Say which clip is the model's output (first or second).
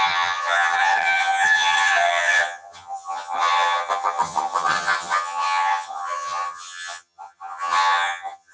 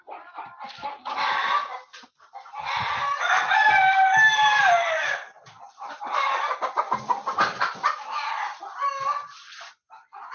first